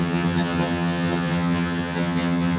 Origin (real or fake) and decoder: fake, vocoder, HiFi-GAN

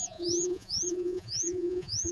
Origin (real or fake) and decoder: fake, vocoder, Vocos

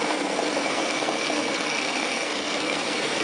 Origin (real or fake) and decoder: fake, codec, SNAC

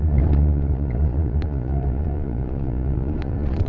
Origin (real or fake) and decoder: fake, vocoder, Vocos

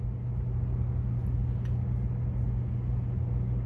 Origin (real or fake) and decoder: real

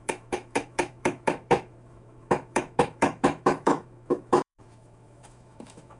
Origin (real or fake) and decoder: fake, autoencoder, DAC-VAE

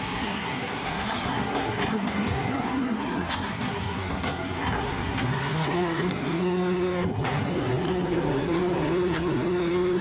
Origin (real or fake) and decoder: fake, codec, SNAC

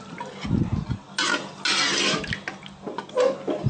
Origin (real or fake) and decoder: real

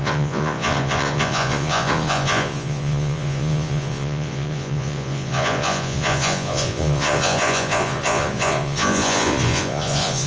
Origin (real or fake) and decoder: fake, vocoder, Vocos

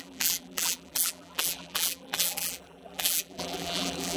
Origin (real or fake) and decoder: fake, vocoder, BigVGAN v2